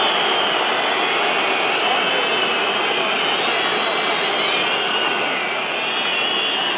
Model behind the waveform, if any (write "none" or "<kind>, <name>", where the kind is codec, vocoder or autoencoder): none